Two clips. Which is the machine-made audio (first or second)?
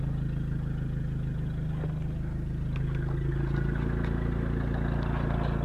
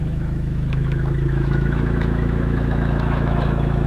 second